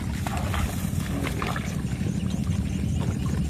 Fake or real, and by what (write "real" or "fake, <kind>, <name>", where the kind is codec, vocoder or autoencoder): real